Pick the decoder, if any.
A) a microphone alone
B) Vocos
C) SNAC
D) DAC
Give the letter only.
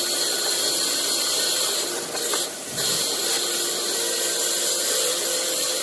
A